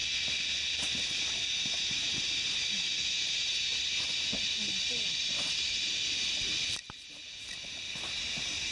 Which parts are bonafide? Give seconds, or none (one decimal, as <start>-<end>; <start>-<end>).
0.0-8.7